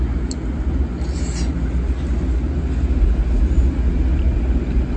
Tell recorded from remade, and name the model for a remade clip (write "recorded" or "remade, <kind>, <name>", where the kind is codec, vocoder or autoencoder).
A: recorded